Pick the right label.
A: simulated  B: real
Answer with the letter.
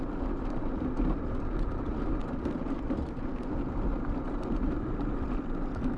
B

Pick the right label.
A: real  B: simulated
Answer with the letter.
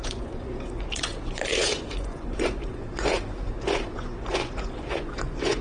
B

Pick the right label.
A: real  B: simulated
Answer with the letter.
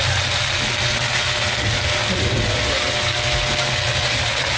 A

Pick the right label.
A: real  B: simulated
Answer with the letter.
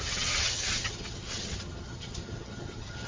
B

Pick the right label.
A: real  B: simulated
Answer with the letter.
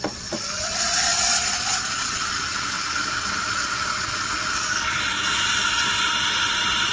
B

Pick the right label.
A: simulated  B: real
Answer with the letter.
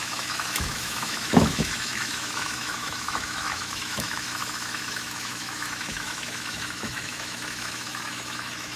A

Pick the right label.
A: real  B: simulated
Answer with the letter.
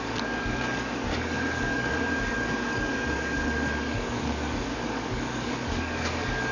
B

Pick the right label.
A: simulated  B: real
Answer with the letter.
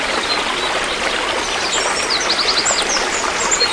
B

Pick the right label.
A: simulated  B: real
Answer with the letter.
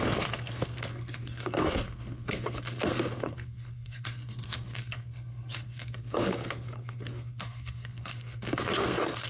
A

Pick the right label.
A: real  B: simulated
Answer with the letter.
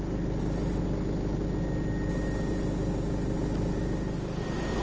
A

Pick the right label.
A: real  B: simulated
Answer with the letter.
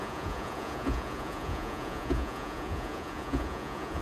B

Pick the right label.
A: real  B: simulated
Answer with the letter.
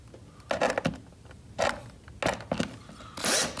A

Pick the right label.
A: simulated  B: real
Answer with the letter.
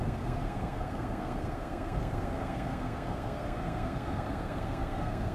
A